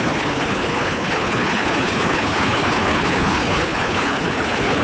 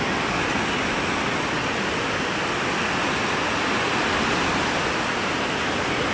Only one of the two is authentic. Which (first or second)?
second